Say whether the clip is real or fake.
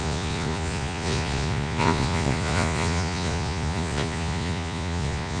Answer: fake